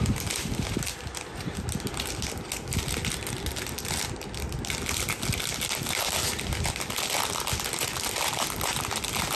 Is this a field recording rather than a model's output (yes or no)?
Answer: yes